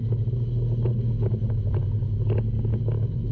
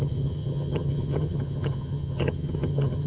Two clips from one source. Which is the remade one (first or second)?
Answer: second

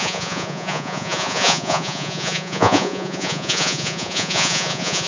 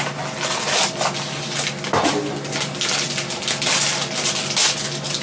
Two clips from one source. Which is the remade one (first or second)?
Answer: first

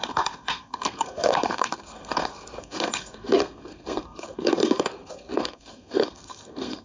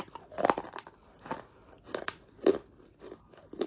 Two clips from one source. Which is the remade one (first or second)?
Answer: first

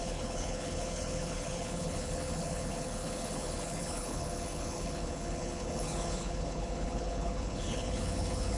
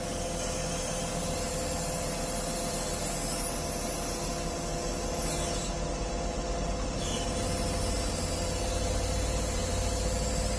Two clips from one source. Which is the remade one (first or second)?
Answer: first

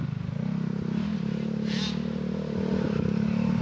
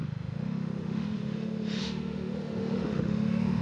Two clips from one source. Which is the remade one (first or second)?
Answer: second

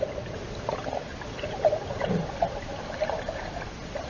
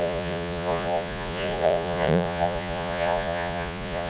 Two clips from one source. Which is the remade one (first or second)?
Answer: second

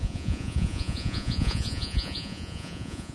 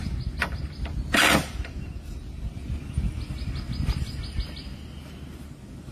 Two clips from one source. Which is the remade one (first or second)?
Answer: first